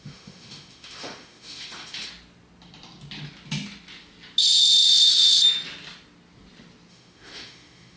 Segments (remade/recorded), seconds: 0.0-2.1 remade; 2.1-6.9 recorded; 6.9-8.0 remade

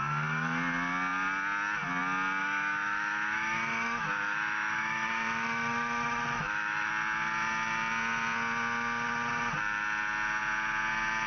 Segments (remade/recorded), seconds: 0.0-2.4 recorded; 2.4-6.9 remade; 6.9-11.3 recorded

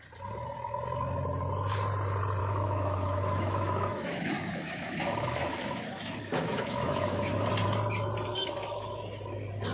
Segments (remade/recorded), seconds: 0.0-2.4 recorded; 2.4-7.5 remade; 7.5-8.3 recorded; 8.3-8.9 remade; 8.9-9.7 recorded

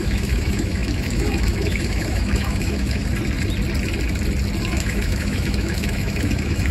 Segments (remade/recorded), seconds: 0.0-3.0 remade; 3.0-4.6 recorded; 4.6-6.7 remade

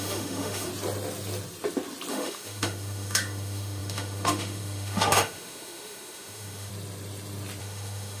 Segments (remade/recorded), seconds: 0.0-0.7 remade; 0.7-2.1 recorded; 2.1-6.7 remade; 6.7-7.6 recorded; 7.6-8.2 remade

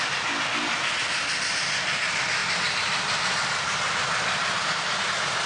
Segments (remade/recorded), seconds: 0.0-5.5 recorded

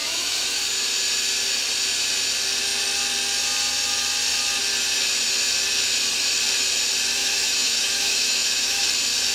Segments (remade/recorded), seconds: 0.0-0.6 remade; 0.6-7.2 recorded; 7.2-8.8 remade; 8.8-9.3 recorded

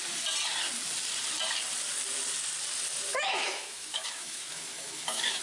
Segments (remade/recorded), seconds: 0.0-3.1 recorded; 3.1-5.4 remade